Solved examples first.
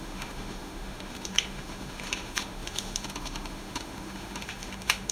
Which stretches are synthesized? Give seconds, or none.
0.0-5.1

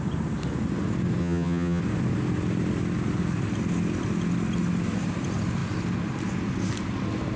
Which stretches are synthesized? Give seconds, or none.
1.2-1.8